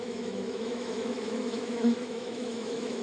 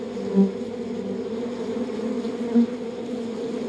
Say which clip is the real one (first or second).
second